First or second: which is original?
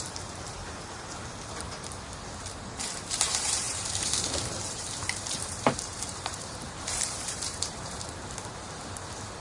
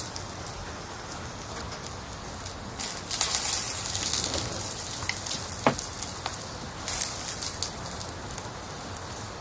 second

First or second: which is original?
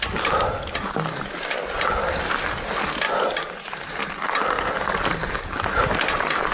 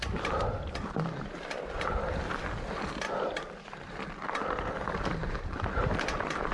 first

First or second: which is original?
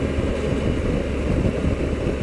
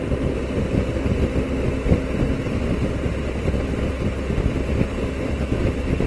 second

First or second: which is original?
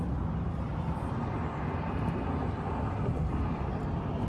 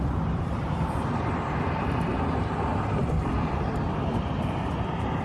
first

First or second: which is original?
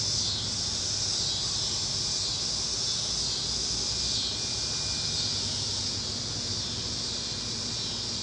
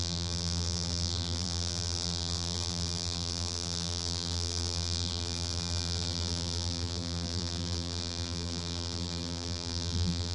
first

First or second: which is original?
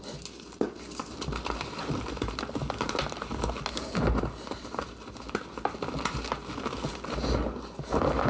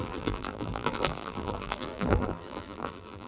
first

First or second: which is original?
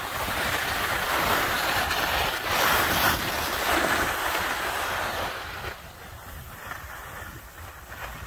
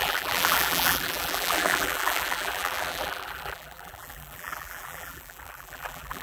first